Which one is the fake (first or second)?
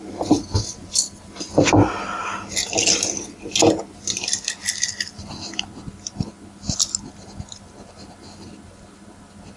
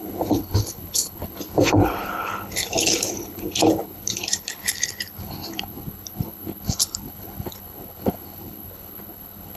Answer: second